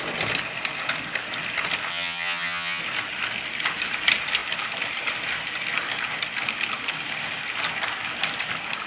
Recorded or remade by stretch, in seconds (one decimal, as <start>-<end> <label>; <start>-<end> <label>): 0.0-1.9 recorded; 1.9-2.8 remade; 2.8-8.9 recorded